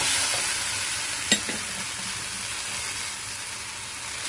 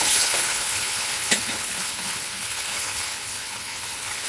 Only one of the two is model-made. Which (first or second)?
second